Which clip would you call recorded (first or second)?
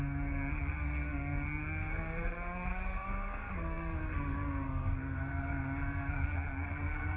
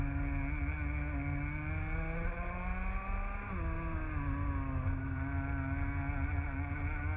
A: second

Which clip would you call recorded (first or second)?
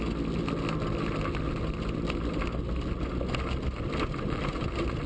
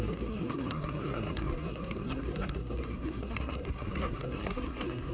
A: first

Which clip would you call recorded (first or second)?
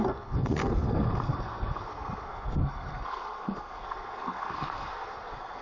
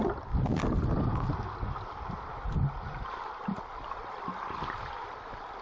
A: second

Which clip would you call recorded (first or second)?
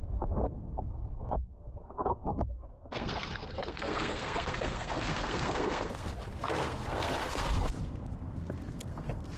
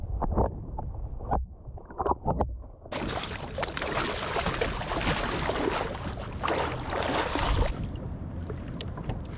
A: second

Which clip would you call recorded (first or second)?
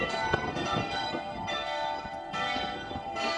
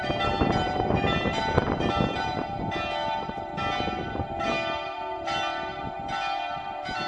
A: second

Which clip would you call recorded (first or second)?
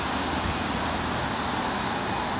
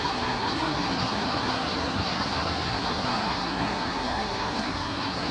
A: first